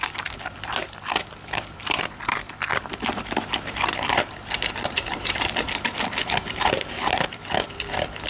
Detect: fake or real fake